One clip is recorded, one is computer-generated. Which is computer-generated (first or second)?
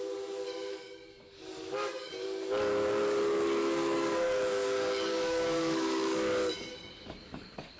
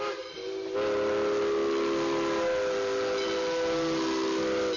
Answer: first